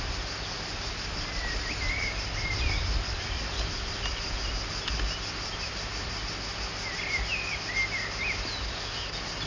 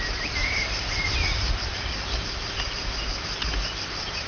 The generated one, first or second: second